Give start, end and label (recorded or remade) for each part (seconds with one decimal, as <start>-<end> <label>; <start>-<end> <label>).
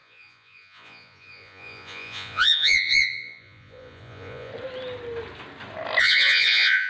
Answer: 0.0-4.5 remade; 4.5-6.0 recorded; 6.0-6.9 remade